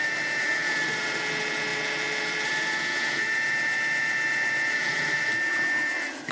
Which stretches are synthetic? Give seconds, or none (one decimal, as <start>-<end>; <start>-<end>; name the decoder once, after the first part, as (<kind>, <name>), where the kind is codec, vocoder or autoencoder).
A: none